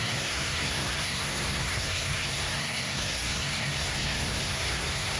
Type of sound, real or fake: fake